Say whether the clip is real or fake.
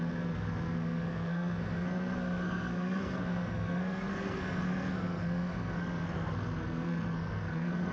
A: fake